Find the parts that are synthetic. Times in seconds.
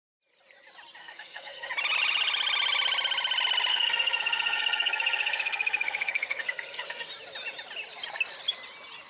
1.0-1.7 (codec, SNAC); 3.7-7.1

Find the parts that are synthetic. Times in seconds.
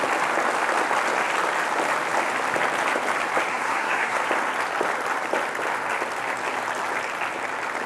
3.5-4.2 (codec, SNAC)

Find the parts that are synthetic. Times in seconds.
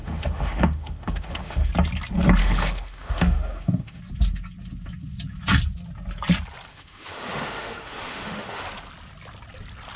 0.0-1.7 (autoencoder, DAC-VAE); 2.4-4.0; 6.7-8.6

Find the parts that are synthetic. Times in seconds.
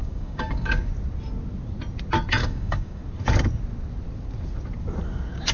0.0-0.9 (codec, DAC); 2.4-3.0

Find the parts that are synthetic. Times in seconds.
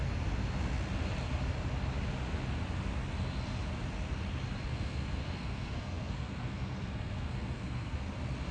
4.7-8.0 (codec, SNAC)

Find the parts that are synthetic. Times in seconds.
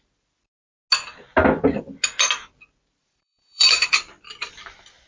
3.0-4.0 (vocoder, BigVGAN v2)